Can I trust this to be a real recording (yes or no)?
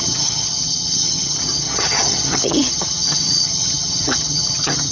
no